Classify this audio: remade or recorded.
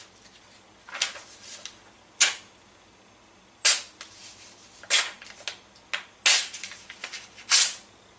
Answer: recorded